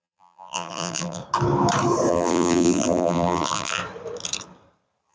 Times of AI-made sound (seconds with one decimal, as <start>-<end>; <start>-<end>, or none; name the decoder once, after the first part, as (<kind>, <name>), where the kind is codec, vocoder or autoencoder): 0.0-1.2 (vocoder, BigVGAN v2); 2.1-3.8